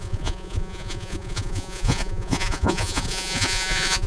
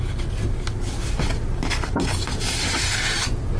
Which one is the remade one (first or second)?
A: first